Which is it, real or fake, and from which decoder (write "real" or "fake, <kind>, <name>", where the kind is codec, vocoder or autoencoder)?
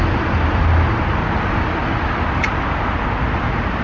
real